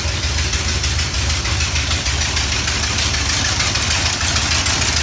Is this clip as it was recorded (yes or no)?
yes